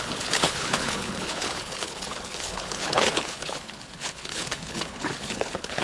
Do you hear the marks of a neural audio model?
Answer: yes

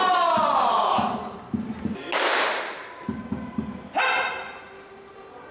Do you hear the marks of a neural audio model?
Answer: no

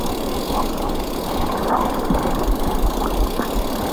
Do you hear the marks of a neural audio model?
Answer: no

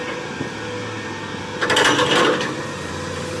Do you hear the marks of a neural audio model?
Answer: no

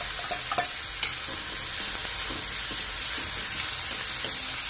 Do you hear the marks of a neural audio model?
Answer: no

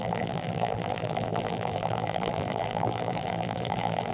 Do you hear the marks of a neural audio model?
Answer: yes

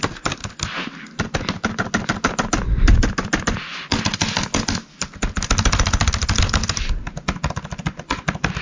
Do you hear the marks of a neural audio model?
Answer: no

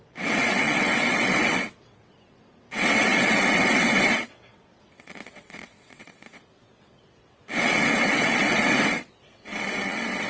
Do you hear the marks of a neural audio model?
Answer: yes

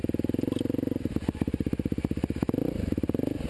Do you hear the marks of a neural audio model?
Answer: no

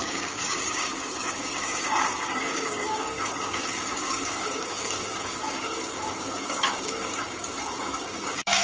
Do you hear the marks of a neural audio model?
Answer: yes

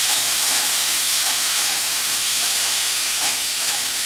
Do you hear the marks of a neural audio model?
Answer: yes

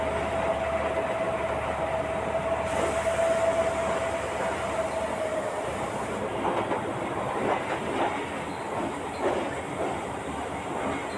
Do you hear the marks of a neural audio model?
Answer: no